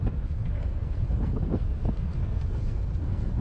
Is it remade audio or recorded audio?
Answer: remade